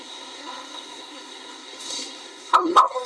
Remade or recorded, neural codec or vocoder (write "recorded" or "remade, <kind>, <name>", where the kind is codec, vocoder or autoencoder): remade, codec, SNAC